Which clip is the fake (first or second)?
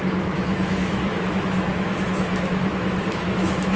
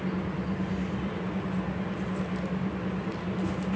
first